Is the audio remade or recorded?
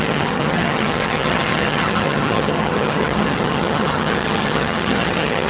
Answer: remade